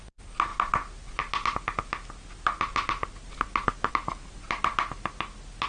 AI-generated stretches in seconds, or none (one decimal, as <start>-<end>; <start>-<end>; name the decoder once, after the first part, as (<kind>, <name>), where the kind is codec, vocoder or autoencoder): none